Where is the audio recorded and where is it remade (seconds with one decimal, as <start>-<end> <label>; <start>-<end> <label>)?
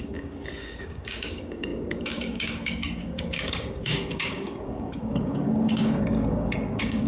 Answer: 0.0-7.1 remade